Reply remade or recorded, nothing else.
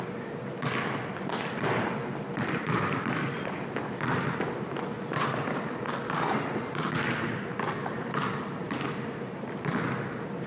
recorded